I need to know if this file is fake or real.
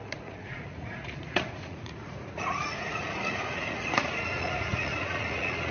fake